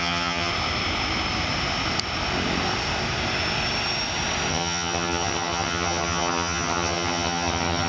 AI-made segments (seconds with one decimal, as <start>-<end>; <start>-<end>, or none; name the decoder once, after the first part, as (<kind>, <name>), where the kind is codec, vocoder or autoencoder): 0.0-0.5 (vocoder, HiFi-GAN); 4.5-7.9